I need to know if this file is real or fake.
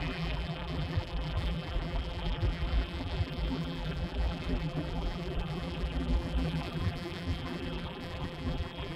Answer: fake